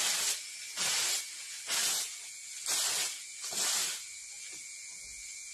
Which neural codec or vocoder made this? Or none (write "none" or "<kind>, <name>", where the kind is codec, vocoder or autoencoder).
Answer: none